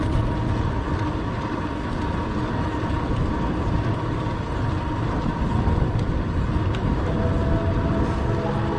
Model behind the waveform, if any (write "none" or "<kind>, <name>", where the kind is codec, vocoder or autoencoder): none